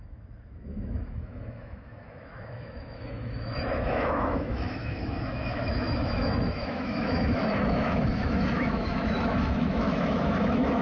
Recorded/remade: remade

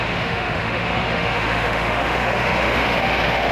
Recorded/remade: remade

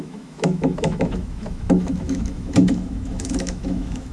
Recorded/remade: remade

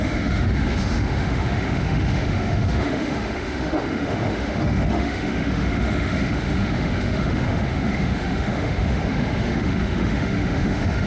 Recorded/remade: remade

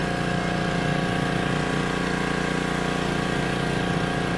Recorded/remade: recorded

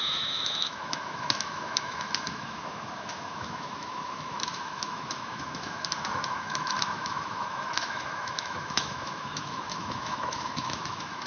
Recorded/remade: remade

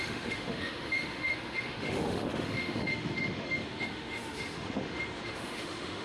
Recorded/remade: remade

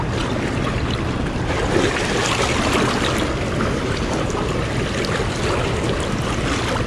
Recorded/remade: recorded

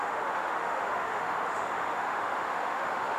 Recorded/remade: remade